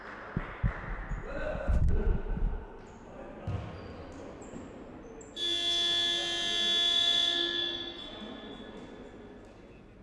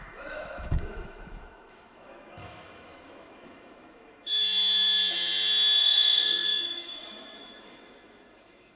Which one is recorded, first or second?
first